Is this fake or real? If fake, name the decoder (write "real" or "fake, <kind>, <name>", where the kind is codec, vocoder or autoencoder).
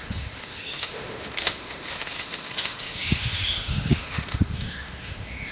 fake, autoencoder, DAC-VAE